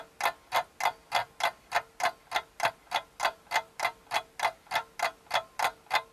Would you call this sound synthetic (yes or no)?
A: no